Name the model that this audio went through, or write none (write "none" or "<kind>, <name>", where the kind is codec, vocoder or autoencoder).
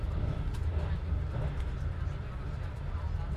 none